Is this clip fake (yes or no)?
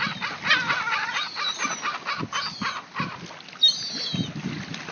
no